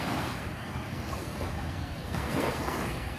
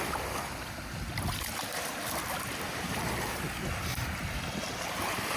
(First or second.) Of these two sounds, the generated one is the first